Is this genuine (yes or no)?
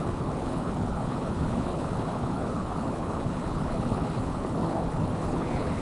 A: no